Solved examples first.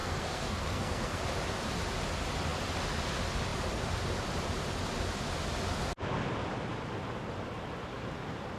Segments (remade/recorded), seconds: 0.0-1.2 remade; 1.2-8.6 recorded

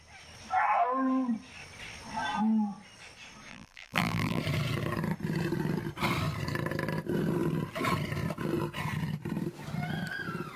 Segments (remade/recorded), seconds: 0.0-3.5 recorded; 3.5-4.4 remade; 4.4-10.6 recorded

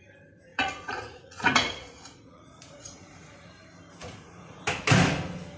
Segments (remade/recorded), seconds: 0.0-0.5 recorded; 0.5-3.5 remade; 3.5-4.0 recorded; 4.0-4.6 remade; 4.6-5.6 recorded

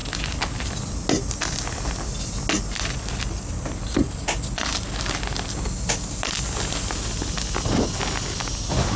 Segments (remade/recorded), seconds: 0.0-9.0 recorded

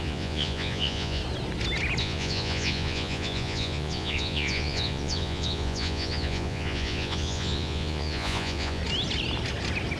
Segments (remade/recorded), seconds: 0.0-1.2 remade; 1.2-2.0 recorded; 2.0-8.8 remade; 8.8-10.0 recorded